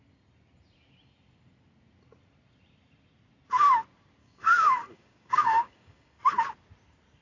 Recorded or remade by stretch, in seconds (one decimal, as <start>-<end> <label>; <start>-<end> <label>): 0.0-4.2 recorded; 4.2-6.3 remade; 6.3-7.2 recorded